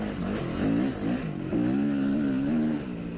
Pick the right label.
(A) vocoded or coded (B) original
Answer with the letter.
B